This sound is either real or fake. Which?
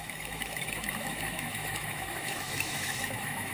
fake